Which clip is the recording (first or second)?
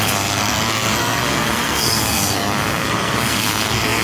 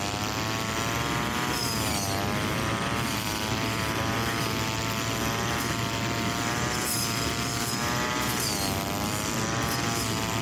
second